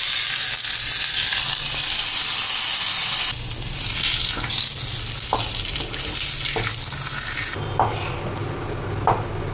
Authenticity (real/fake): real